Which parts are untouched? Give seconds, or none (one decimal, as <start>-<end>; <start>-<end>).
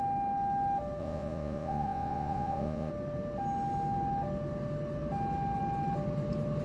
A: 0.0-1.0; 2.9-6.6